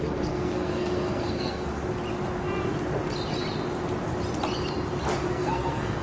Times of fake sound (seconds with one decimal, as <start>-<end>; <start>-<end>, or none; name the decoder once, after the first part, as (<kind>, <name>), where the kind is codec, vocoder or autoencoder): 0.0-1.7 (codec, SNAC); 5.3-6.0